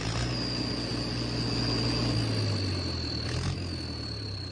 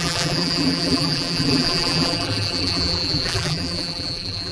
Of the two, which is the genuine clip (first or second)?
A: first